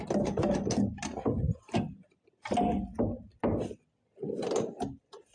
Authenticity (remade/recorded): recorded